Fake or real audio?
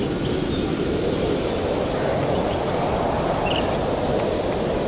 real